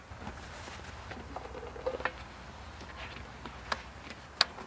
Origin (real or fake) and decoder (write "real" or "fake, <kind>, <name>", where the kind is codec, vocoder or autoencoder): real